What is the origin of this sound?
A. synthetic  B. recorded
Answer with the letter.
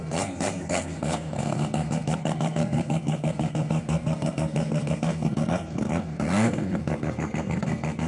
A